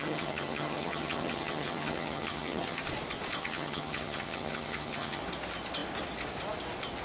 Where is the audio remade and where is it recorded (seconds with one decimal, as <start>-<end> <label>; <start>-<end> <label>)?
0.0-2.8 remade; 2.8-3.4 recorded; 3.4-5.2 remade; 5.2-7.0 recorded

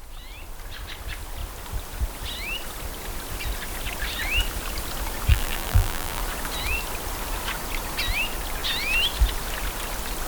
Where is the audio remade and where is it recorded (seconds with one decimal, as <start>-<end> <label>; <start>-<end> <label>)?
0.0-5.3 recorded; 5.3-6.2 remade; 6.2-10.3 recorded

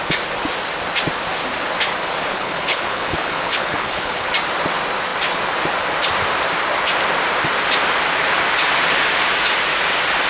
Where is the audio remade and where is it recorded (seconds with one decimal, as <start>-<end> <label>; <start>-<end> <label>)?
0.0-2.3 recorded; 2.3-4.3 remade; 4.3-10.3 recorded

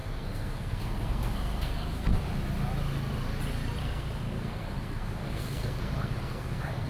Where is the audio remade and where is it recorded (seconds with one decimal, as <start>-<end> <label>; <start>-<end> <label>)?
0.0-2.3 remade; 2.3-3.8 recorded; 3.8-6.9 remade

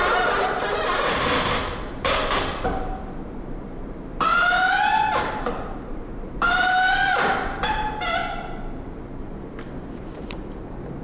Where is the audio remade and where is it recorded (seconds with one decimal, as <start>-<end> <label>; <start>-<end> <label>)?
0.0-8.2 remade; 8.2-9.4 recorded; 9.4-11.0 remade

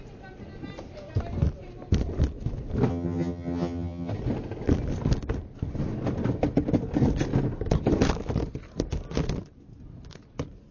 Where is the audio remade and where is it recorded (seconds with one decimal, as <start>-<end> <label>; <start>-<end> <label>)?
0.0-2.9 recorded; 2.9-4.1 remade; 4.1-10.7 recorded